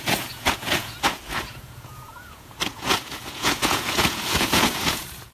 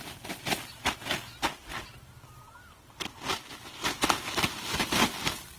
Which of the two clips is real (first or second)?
second